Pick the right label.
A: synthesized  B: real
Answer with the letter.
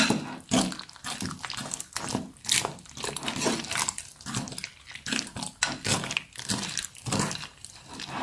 B